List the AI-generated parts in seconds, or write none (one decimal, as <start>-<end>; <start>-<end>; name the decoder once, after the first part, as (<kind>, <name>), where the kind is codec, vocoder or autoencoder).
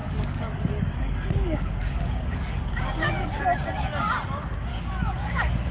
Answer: 0.0-3.4 (codec, DAC); 4.7-5.7